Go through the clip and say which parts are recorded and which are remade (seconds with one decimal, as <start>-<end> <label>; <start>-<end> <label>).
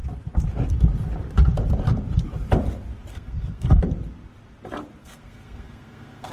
0.0-3.1 recorded; 3.1-3.8 remade; 3.8-5.0 recorded; 5.0-6.3 remade